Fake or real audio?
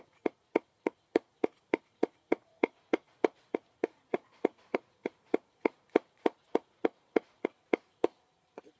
fake